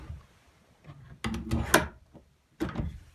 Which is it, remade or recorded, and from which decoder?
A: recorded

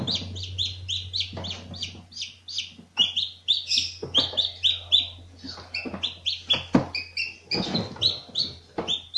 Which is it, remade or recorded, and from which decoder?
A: recorded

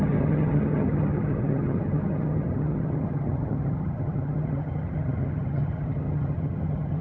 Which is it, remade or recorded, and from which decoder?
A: remade, vocoder, HiFi-GAN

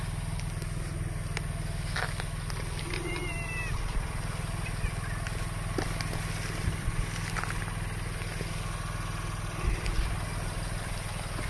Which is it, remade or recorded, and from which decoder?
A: recorded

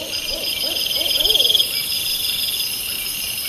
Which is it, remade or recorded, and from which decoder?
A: remade, vocoder, BigVGAN v2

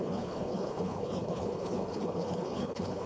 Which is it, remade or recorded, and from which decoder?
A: remade, codec, HILCodec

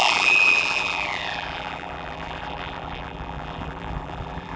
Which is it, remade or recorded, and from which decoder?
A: remade, vocoder, BigVGAN v2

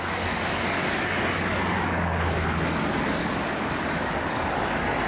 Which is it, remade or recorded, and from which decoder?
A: remade, codec, DAC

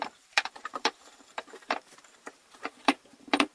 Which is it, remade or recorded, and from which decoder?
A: remade, vocoder, BigVGAN v2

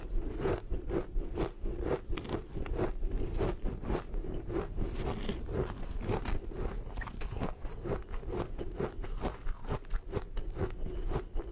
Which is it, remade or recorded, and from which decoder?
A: recorded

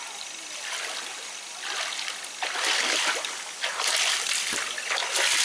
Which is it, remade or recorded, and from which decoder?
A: recorded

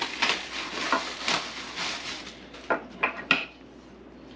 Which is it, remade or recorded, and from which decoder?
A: recorded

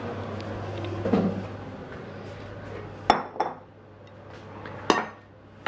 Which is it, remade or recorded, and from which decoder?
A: recorded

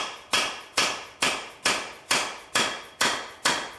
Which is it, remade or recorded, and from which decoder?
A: recorded